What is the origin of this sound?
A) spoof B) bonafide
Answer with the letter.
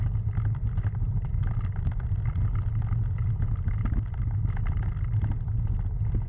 B